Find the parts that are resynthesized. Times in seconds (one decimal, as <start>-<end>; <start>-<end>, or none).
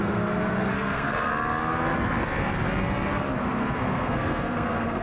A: 0.0-1.3; 3.4-5.0